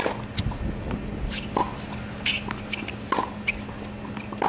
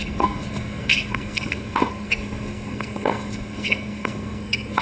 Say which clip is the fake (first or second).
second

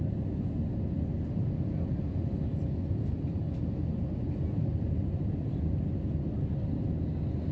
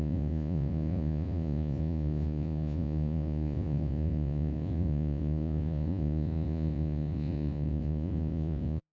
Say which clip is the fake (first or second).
second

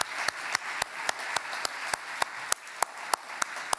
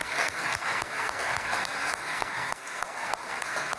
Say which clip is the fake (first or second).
second